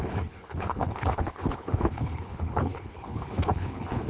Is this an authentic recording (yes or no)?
no